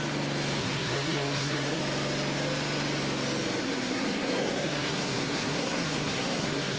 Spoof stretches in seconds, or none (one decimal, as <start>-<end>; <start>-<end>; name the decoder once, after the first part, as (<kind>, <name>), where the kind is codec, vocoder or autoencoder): 0.6-1.8 (codec, SNAC); 3.6-6.8